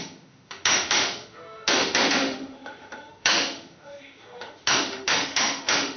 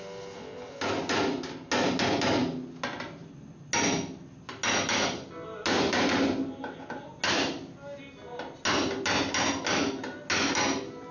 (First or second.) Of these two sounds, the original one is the second